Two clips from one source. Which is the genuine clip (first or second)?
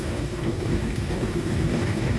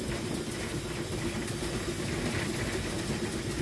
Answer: second